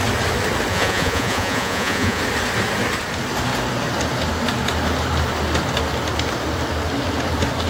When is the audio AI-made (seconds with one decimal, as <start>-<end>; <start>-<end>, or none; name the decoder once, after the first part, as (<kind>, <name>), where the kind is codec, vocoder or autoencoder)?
0.7-2.2 (vocoder, Vocos)